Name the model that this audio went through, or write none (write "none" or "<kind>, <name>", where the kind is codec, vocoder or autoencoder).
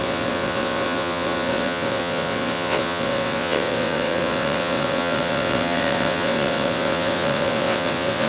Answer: vocoder, WaveNeXt